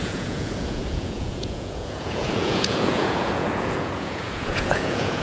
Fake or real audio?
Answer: fake